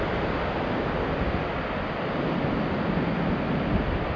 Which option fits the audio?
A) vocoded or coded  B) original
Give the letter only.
B